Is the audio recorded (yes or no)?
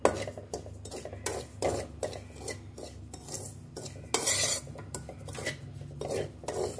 yes